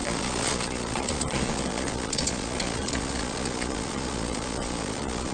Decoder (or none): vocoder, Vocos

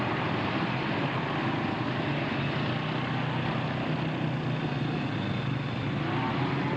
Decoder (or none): none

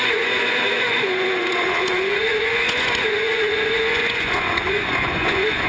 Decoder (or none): vocoder, Vocos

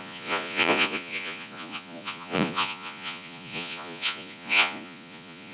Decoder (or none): vocoder, Vocos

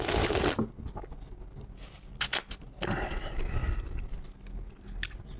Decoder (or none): none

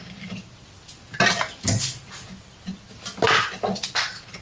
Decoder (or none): none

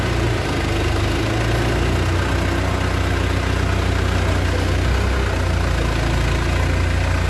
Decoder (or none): none